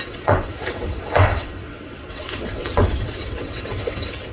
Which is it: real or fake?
fake